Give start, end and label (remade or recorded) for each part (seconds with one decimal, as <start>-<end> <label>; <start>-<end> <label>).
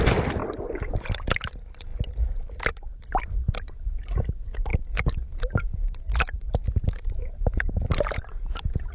0.0-4.7 recorded; 4.7-8.2 remade; 8.2-8.9 recorded